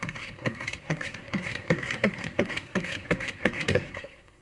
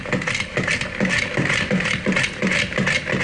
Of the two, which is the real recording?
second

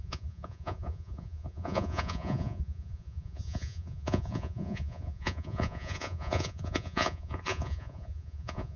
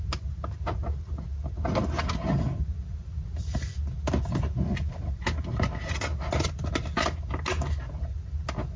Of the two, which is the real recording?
second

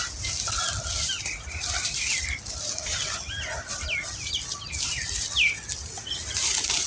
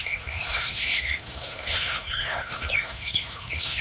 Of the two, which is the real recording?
first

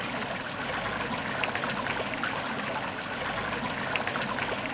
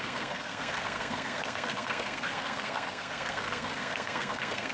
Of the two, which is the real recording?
first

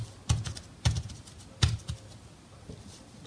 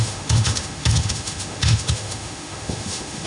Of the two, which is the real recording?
first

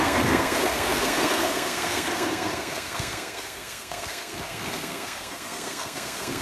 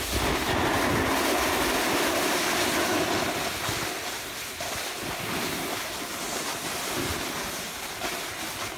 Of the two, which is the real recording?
second